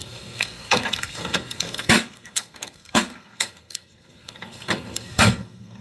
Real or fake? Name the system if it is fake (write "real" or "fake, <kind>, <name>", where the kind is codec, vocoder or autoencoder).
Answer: fake, codec, SNAC